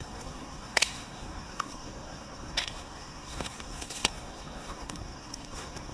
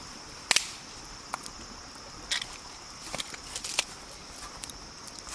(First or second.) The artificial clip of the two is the first